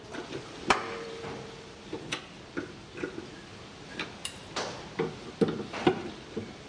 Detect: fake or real fake